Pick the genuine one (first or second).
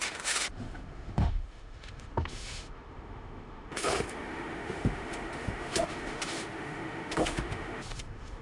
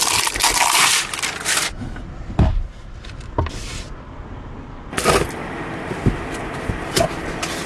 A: second